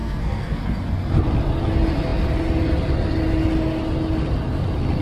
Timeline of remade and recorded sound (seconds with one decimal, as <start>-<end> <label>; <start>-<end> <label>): 0.0-0.6 remade; 0.6-5.0 recorded